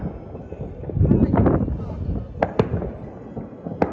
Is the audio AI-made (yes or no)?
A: no